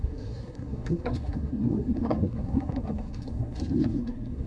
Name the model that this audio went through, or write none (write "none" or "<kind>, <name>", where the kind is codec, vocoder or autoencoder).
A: codec, SNAC